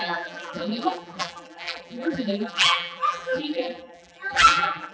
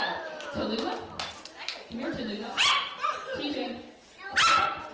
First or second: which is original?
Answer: second